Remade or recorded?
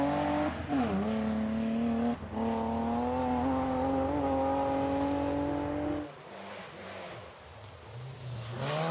recorded